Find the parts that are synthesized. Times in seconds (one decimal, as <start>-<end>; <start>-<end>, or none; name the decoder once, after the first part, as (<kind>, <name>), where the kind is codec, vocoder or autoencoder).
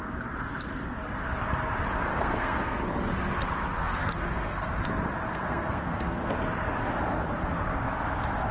2.1-2.8 (codec, SNAC); 3.8-4.7; 5.3-6.3